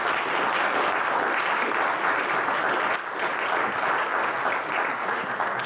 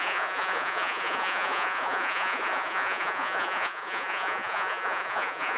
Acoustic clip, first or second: first